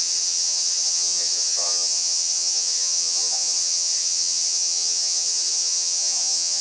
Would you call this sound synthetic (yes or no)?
yes